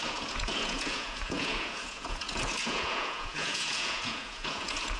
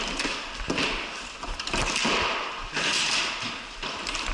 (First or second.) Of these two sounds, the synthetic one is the first